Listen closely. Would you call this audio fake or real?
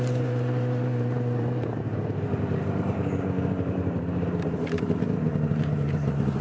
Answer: fake